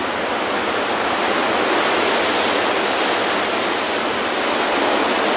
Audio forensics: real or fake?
real